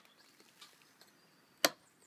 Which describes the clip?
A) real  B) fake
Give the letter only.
A